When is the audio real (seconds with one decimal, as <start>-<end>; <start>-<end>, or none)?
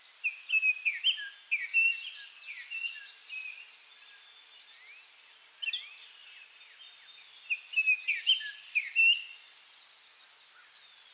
0.0-3.2; 6.9-8.2; 9.1-11.1